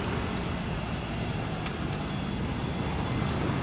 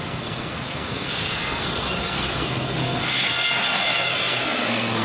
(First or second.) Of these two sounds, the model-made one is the second